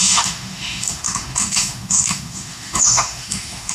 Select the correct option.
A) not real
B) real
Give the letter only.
A